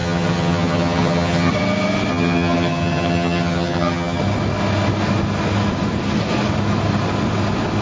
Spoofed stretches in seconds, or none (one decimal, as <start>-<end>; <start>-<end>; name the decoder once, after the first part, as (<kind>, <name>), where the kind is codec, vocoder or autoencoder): 0.0-1.5 (vocoder, HiFi-GAN); 2.1-4.2